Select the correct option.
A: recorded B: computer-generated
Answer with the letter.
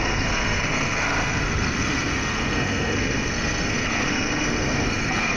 B